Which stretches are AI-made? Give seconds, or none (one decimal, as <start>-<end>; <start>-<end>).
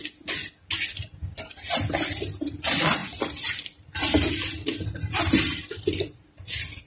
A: 1.1-1.9; 3.0-4.3; 5.6-6.4